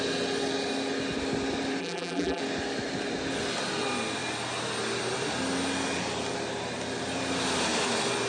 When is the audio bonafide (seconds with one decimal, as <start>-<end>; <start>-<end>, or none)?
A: 0.0-1.8; 2.4-8.3

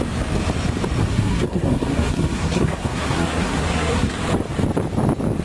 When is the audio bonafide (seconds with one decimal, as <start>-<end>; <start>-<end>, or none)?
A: 0.0-1.0; 4.2-5.4